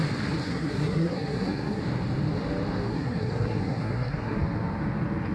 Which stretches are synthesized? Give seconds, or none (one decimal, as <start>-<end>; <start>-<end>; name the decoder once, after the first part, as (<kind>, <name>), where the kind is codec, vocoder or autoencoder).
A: 0.4-1.8 (codec, SNAC); 2.9-4.4